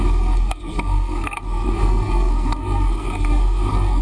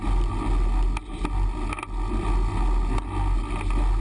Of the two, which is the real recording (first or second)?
second